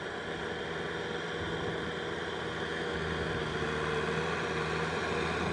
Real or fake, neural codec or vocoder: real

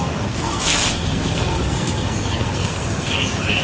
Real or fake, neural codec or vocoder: fake, codec, SNAC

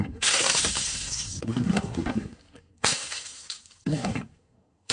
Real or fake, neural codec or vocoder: fake, codec, SNAC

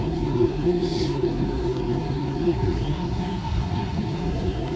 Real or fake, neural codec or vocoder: fake, codec, SNAC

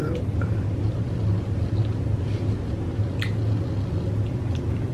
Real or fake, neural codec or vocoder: real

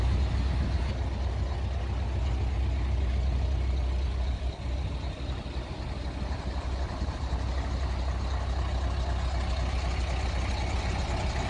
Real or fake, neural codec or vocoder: real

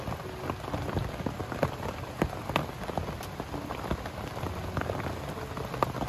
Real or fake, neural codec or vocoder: real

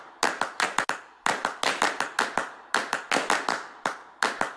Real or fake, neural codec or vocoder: real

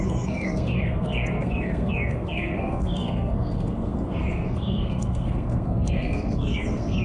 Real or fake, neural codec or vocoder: fake, codec, SNAC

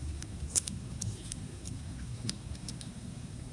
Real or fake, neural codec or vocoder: fake, codec, SNAC